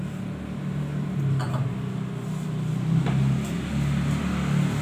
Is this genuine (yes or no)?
yes